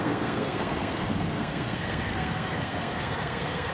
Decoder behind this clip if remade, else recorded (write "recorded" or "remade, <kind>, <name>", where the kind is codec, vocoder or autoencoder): remade, codec, SNAC